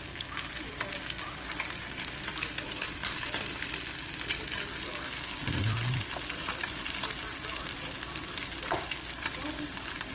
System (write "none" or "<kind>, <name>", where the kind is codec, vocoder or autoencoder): vocoder, BigVGAN v2